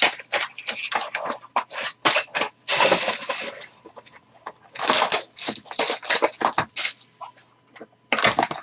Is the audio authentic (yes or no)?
yes